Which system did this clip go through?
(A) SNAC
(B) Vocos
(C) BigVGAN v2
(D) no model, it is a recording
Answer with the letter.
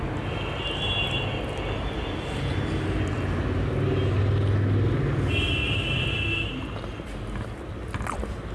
D